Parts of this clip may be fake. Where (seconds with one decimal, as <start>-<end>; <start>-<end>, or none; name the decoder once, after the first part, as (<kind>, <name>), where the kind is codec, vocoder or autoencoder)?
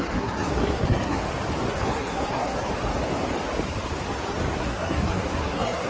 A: 0.0-1.2 (codec, SNAC); 1.7-2.7; 4.6-5.9